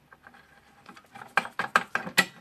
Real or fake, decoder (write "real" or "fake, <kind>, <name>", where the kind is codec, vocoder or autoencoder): real